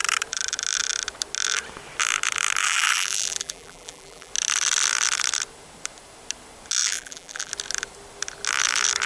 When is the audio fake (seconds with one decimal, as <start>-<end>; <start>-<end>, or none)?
2.6-4.3; 6.8-7.5